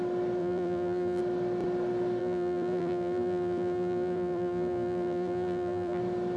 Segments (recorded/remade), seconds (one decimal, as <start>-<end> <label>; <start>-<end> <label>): 0.0-0.4 recorded; 0.4-1.2 remade; 1.2-2.2 recorded; 2.2-6.0 remade; 6.0-6.4 recorded